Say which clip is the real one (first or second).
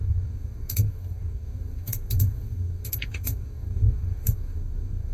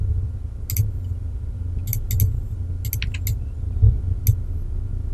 second